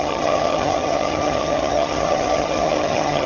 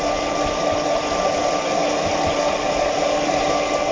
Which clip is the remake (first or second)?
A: first